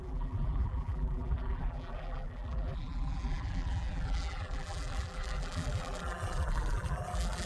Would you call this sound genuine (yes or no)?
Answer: no